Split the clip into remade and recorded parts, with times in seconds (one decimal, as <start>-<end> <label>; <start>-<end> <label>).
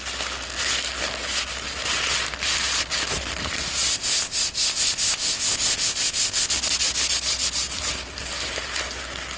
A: 0.0-3.9 recorded; 3.9-6.5 remade; 6.5-9.4 recorded